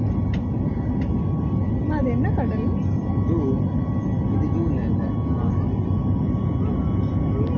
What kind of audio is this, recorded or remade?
recorded